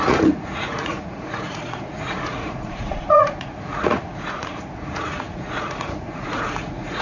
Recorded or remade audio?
remade